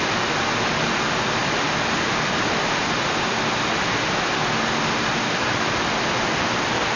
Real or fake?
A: real